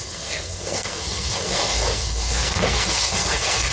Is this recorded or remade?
remade